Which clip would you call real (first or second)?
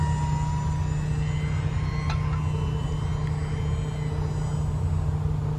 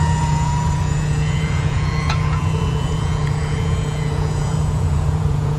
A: first